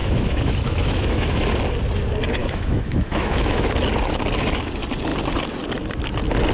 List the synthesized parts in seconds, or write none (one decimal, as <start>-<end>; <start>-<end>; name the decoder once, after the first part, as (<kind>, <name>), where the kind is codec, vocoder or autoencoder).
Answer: 0.0-1.5 (autoencoder, DAC-VAE); 2.4-3.7